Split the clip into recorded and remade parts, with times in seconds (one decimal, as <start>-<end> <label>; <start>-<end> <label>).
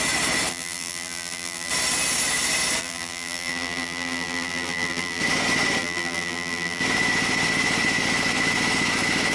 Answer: 0.0-0.5 recorded; 0.5-1.7 remade; 1.7-2.8 recorded; 2.8-5.2 remade; 5.2-5.8 recorded; 5.8-6.8 remade; 6.8-9.3 recorded